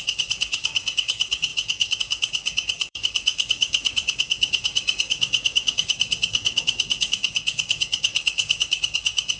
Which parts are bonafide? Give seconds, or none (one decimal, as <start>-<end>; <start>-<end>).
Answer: none